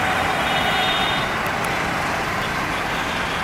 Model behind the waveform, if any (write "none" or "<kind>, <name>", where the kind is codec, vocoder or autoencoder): none